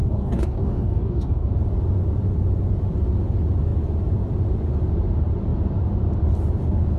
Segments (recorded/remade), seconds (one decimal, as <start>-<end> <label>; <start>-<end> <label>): 0.0-1.5 remade; 1.5-7.0 recorded